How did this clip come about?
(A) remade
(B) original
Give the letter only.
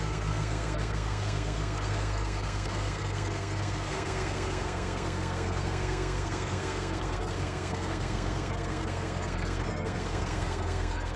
A